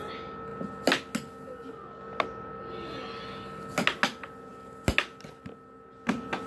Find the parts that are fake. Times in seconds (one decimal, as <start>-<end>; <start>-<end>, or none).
none